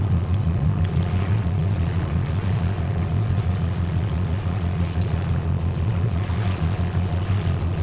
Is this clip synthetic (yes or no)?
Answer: yes